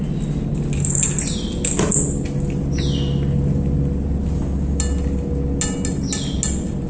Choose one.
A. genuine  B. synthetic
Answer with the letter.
A